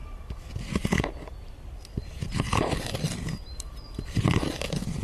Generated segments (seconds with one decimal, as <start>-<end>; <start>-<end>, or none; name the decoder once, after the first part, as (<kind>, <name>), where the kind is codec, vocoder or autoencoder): none